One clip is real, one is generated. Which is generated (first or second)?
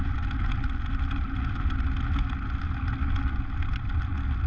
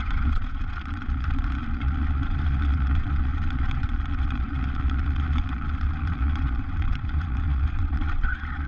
second